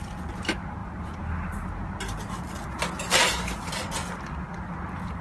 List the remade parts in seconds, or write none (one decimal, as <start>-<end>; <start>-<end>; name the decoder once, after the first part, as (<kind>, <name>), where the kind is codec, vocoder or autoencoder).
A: none